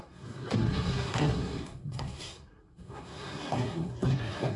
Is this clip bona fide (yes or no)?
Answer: no